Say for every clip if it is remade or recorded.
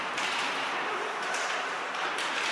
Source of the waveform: remade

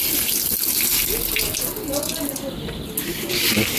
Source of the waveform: recorded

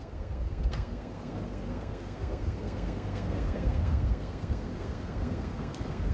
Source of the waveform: remade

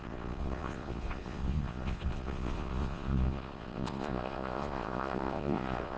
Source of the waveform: remade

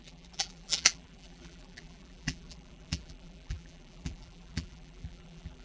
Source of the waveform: remade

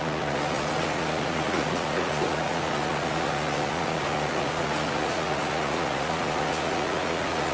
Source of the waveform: remade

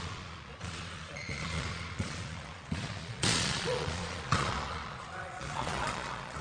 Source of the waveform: remade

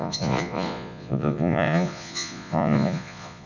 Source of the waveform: remade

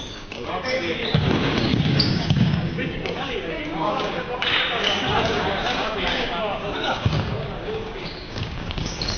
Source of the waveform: remade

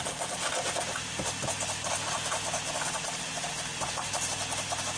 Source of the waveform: recorded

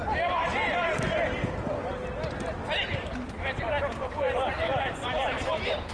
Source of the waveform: recorded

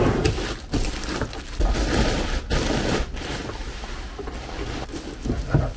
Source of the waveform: recorded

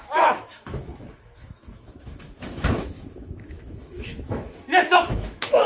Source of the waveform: remade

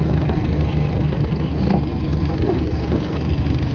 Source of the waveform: remade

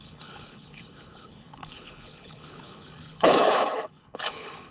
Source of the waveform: remade